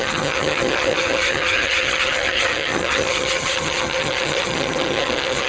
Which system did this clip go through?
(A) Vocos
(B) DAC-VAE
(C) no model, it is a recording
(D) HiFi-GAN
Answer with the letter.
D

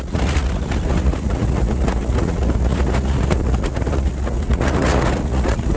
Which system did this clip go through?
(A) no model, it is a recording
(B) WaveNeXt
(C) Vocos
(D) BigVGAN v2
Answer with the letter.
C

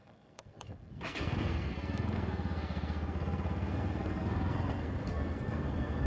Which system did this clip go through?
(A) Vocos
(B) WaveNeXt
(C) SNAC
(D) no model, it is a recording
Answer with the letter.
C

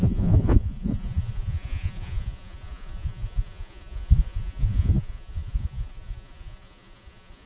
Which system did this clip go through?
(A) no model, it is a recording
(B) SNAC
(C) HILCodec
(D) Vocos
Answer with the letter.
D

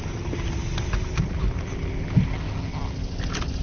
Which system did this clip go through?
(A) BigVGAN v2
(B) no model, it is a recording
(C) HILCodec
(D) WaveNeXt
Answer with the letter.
B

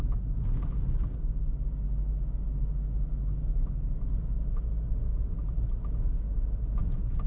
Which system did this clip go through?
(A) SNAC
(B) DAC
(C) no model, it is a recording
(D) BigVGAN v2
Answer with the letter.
C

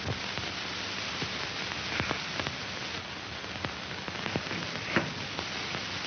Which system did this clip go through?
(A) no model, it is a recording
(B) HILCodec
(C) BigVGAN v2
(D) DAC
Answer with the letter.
A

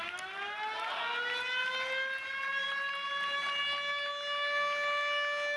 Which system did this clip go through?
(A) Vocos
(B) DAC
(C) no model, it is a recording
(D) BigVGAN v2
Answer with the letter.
C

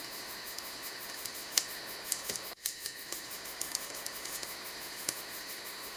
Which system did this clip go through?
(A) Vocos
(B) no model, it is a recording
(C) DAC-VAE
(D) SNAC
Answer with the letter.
C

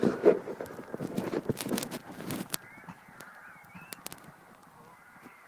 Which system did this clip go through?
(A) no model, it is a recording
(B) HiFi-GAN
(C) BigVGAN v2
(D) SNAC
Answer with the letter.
C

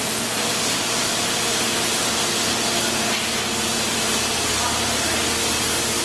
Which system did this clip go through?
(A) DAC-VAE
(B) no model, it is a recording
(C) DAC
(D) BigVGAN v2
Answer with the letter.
B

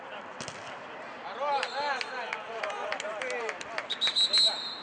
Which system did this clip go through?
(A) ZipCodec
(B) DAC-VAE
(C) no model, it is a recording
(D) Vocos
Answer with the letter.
C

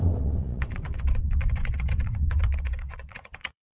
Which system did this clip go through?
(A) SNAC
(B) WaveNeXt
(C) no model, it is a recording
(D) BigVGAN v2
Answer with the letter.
B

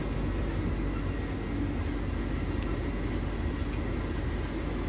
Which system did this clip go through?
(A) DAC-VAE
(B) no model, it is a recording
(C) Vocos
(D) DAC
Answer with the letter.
B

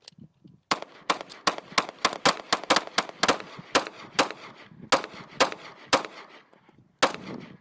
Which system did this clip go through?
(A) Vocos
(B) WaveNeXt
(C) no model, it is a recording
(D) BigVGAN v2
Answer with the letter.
C